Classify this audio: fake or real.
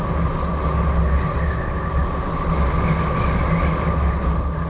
real